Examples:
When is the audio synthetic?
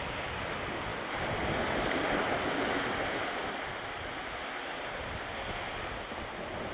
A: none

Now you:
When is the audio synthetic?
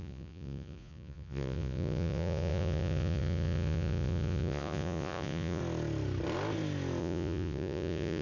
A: 0.0-5.6 (vocoder, Vocos); 7.0-8.2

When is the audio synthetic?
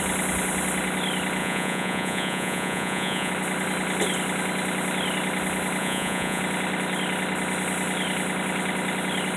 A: 1.4-3.3 (vocoder, Vocos); 5.8-6.4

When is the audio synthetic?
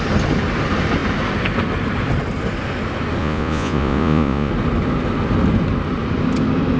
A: 3.2-4.5 (vocoder, Vocos)